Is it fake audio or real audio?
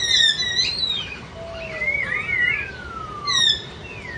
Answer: real